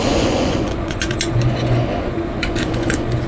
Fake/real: fake